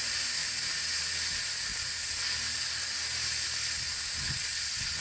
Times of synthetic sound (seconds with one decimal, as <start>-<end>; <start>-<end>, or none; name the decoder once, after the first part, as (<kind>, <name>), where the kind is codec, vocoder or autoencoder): 0.4-1.0 (vocoder, BigVGAN v2)